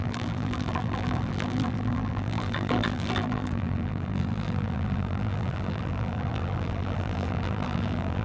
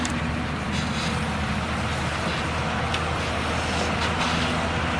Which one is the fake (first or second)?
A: first